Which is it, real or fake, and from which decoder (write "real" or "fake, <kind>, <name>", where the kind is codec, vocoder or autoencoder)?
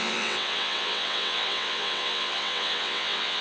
fake, vocoder, WaveNeXt